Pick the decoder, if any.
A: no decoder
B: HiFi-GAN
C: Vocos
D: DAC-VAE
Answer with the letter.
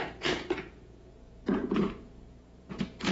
C